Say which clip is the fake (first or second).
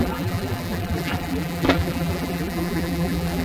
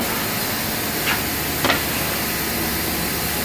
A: first